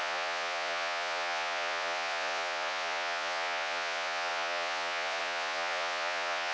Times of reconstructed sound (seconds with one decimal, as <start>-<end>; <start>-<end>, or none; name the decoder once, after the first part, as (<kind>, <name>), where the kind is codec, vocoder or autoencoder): 0.0-6.5 (vocoder, Vocos)